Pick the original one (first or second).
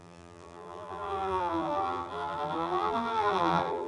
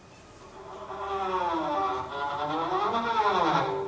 second